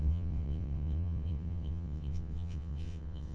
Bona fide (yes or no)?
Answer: no